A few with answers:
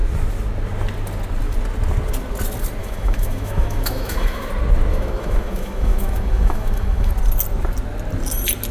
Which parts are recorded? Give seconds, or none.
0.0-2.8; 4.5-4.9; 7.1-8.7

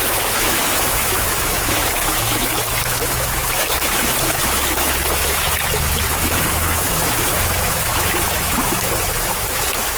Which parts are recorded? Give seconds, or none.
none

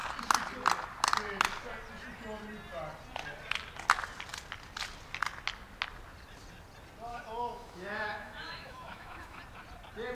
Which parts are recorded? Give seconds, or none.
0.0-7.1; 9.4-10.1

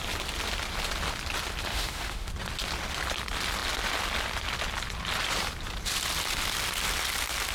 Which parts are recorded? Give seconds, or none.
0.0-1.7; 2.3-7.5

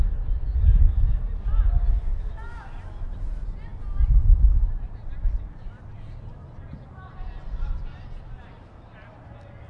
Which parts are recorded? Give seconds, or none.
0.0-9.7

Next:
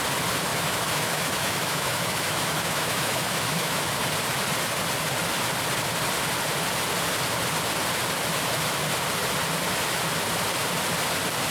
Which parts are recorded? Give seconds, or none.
0.0-0.5; 3.9-11.5